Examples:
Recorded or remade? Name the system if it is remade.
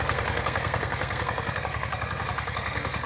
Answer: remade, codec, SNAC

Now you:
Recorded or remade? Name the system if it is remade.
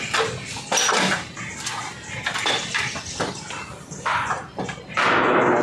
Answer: recorded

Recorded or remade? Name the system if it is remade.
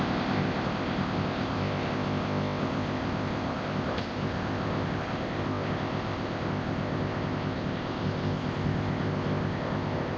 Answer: remade, codec, ZipCodec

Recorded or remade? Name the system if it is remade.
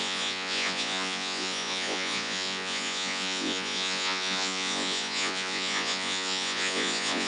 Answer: remade, vocoder, Vocos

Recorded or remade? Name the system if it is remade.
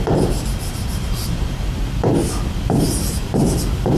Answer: remade, vocoder, BigVGAN v2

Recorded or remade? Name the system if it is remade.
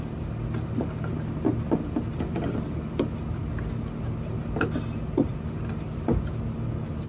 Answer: recorded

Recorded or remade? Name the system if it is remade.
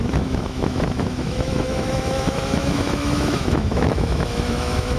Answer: remade, autoencoder, DAC-VAE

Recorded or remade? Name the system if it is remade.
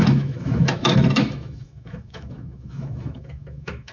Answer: remade, autoencoder, DAC-VAE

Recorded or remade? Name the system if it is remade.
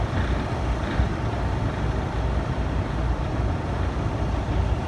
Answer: remade, vocoder, BigVGAN v2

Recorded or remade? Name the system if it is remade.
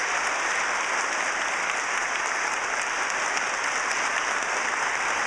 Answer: recorded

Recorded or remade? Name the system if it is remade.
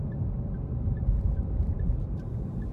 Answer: remade, vocoder, BigVGAN v2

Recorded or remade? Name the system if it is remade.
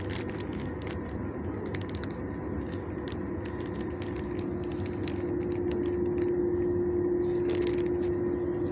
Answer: recorded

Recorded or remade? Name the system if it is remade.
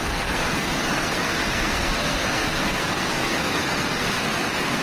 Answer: remade, codec, SNAC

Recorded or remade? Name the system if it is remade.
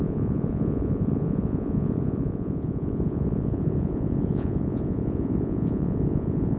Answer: remade, vocoder, Vocos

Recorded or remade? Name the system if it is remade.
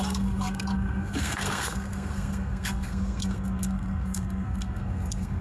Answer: remade, codec, SNAC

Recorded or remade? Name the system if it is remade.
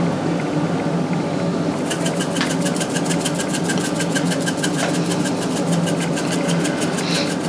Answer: recorded